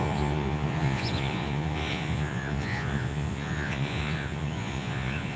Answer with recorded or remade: remade